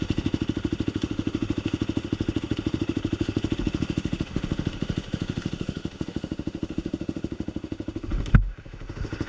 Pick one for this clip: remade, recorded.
remade